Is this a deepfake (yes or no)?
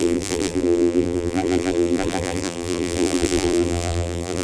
yes